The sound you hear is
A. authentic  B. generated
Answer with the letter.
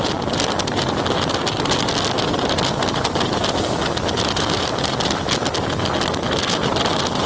A